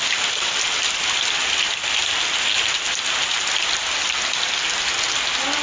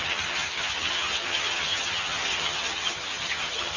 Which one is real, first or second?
first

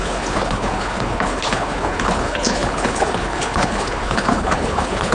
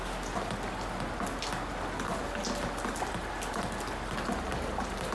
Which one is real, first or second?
second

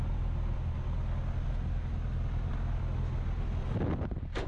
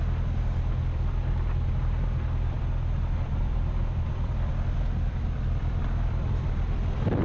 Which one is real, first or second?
first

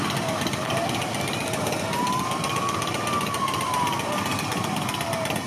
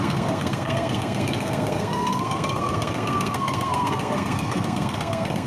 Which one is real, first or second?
first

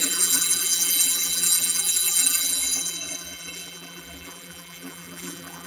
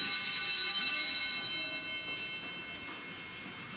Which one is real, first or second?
second